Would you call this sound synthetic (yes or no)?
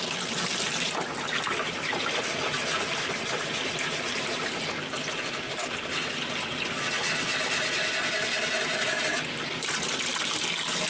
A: no